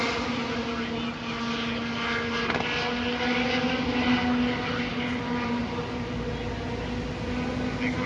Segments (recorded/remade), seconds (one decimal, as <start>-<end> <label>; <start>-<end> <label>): 0.0-4.9 recorded; 4.9-6.3 remade; 6.3-8.1 recorded